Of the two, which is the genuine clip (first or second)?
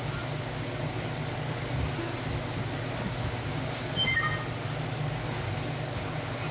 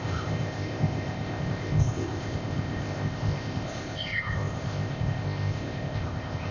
first